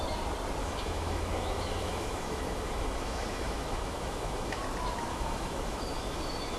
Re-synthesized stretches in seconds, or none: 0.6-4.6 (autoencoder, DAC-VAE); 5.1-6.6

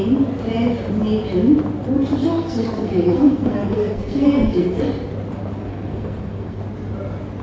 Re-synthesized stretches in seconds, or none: 2.2-4.9 (codec, SNAC); 5.7-6.6